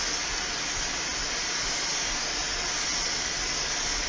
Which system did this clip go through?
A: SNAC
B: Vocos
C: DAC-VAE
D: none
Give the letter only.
D